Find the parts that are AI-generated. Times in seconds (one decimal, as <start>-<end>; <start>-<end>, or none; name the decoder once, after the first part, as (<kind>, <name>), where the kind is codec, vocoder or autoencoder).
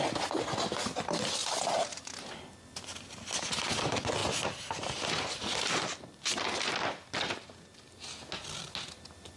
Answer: none